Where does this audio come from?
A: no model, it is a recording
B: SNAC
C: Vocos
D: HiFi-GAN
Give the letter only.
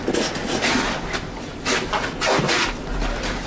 A